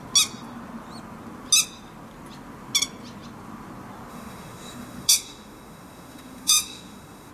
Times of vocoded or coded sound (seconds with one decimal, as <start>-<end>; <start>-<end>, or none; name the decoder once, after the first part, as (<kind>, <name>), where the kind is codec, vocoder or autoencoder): 4.1-7.3 (autoencoder, DAC-VAE)